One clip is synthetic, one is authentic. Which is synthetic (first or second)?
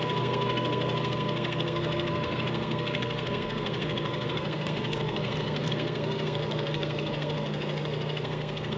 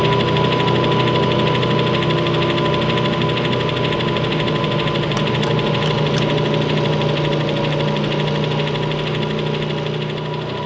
first